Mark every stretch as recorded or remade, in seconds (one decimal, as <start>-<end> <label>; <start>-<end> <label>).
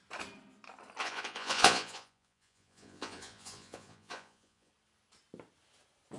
0.0-1.0 recorded; 1.0-4.7 remade; 4.7-6.2 recorded